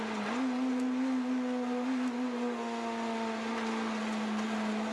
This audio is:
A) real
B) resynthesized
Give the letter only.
A